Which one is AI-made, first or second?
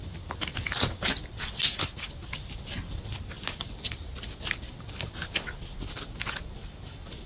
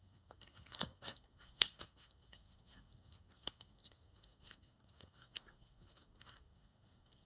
second